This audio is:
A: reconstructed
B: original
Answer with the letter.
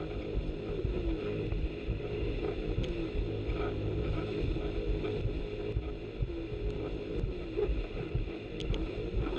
B